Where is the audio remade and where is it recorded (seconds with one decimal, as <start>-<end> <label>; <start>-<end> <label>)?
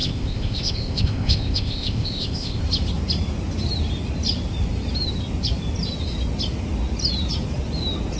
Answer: 0.0-2.6 remade; 2.6-8.2 recorded